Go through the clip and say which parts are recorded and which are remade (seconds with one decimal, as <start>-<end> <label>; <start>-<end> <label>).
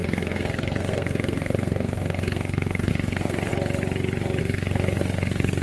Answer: 0.0-3.5 remade; 3.5-4.4 recorded; 4.4-5.6 remade